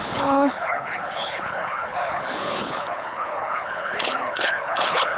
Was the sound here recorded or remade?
remade